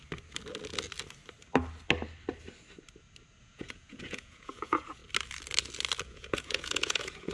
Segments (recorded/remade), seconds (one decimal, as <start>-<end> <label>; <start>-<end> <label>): 0.0-3.4 recorded; 3.4-5.0 remade; 5.0-6.0 recorded; 6.0-7.3 remade